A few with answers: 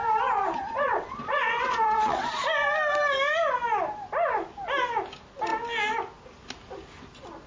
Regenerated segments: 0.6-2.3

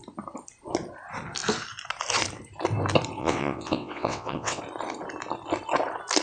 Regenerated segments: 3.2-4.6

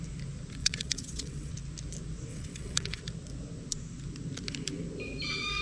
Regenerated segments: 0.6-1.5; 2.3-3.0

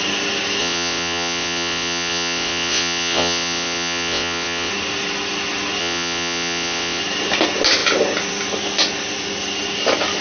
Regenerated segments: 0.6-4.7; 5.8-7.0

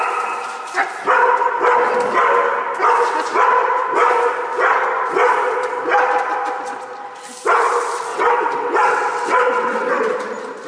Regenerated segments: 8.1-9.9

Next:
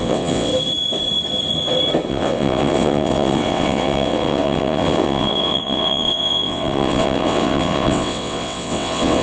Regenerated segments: 0.0-0.5; 2.1-9.2

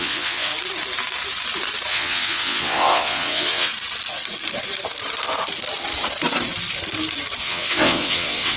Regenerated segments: 0.0-0.5; 1.9-3.7; 7.4-8.6

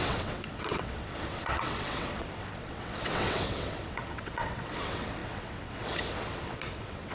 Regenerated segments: 0.0-7.1